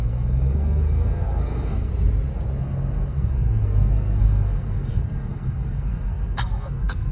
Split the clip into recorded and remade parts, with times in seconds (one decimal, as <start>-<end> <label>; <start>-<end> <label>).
0.0-1.9 remade; 1.9-2.6 recorded; 2.6-7.1 remade